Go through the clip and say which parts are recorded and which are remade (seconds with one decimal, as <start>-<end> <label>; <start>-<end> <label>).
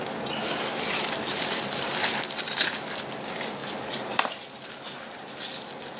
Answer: 0.0-1.3 recorded; 1.3-1.9 remade; 1.9-3.6 recorded; 3.6-4.7 remade; 4.7-6.0 recorded